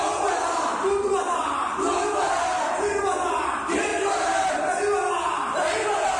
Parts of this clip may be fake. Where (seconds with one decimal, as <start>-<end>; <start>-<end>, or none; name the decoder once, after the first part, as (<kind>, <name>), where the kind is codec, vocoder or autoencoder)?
2.4-3.0 (vocoder, BigVGAN v2); 3.9-4.5